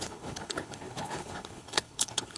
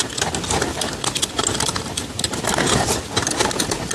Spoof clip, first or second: first